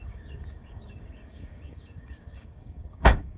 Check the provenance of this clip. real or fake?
fake